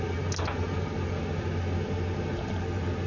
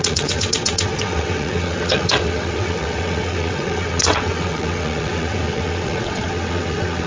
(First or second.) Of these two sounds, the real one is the first